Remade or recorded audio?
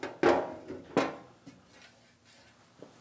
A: recorded